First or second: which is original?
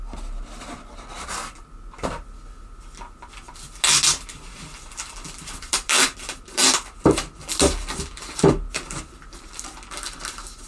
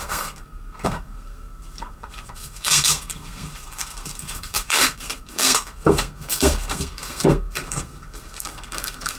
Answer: first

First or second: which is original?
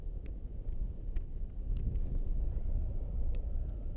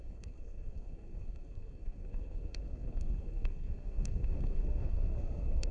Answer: first